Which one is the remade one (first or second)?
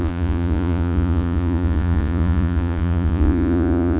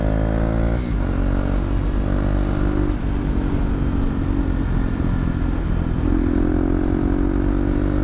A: first